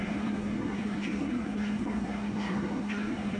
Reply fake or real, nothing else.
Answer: fake